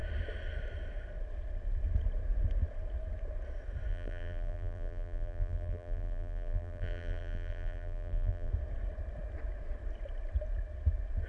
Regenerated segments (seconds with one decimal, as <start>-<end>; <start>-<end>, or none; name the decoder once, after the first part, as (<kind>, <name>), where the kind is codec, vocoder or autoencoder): 3.9-8.5 (vocoder, BigVGAN v2)